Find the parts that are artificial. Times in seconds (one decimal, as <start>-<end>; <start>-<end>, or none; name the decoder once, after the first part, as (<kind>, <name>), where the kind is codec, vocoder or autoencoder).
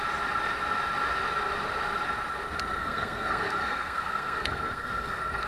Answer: 2.8-5.5 (codec, SNAC)